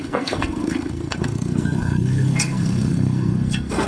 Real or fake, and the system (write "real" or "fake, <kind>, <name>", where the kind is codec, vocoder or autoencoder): fake, codec, SNAC